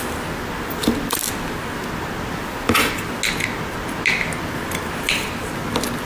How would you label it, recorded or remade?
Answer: recorded